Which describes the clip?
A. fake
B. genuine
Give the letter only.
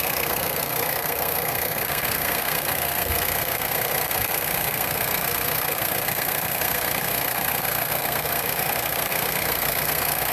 A